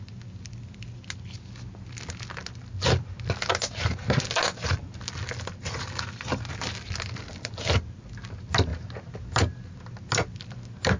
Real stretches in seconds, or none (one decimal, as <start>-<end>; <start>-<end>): 0.0-11.0